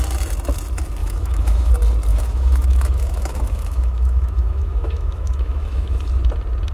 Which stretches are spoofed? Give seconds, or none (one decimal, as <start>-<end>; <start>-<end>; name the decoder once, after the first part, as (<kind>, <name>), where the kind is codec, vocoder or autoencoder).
1.0-1.7 (autoencoder, DAC-VAE); 2.1-6.1